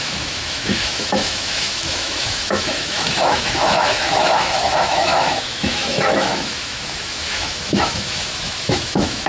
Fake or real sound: fake